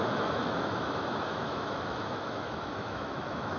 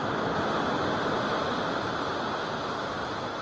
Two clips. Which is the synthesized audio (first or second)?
first